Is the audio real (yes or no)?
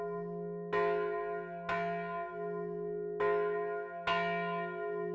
yes